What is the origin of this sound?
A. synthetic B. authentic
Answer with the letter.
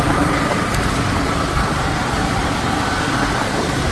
B